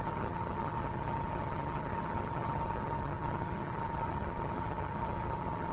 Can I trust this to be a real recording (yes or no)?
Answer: no